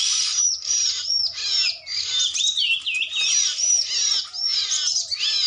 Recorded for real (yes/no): yes